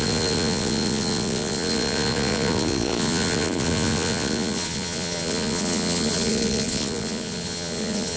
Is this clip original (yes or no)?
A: no